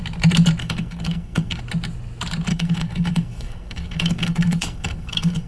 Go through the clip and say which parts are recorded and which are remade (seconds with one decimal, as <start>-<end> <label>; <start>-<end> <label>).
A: 0.0-0.6 recorded; 0.6-1.6 remade; 1.6-2.5 recorded; 2.5-5.5 remade